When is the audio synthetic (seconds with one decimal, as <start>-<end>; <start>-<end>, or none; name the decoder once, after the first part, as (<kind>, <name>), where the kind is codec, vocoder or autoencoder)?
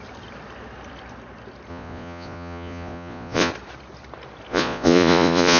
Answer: 1.7-3.5 (vocoder, Vocos); 4.5-5.6